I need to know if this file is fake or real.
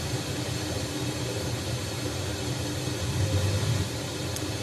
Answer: fake